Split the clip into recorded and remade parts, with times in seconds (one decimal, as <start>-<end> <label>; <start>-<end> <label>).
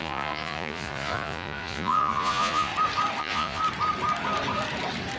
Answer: 0.0-2.7 remade; 2.7-3.2 recorded; 3.2-3.6 remade; 3.6-5.2 recorded